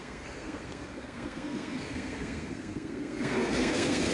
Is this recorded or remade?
remade